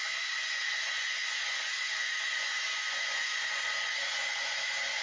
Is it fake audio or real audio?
fake